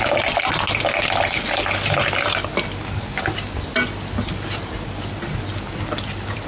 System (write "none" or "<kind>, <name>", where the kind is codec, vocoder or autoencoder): none